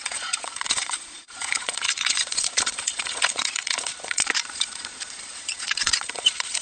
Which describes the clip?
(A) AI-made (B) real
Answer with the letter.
A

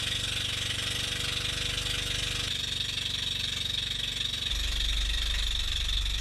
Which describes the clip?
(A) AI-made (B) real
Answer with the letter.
B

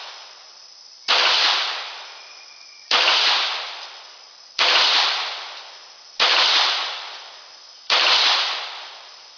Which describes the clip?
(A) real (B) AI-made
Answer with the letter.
B